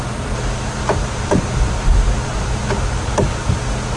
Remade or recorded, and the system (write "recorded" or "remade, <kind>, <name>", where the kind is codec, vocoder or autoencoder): recorded